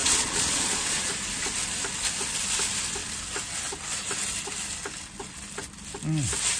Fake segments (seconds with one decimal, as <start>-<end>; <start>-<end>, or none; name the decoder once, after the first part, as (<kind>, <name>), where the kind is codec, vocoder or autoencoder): 0.0-1.1 (vocoder, Vocos)